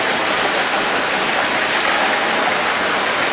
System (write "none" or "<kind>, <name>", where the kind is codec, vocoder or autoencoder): none